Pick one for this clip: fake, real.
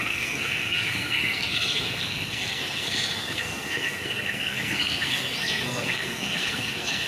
fake